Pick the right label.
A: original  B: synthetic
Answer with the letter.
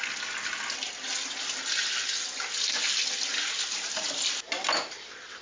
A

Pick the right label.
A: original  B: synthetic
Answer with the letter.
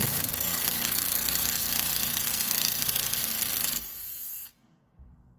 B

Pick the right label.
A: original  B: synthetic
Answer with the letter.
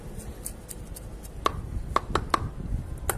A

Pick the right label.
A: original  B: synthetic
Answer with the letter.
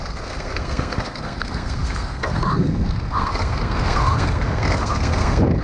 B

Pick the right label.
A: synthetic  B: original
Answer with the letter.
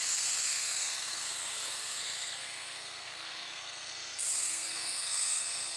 A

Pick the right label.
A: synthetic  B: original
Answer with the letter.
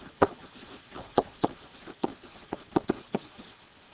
A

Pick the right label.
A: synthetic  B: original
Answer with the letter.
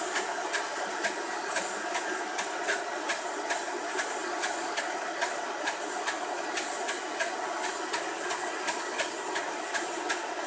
B